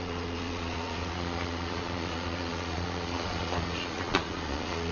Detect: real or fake fake